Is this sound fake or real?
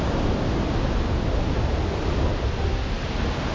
real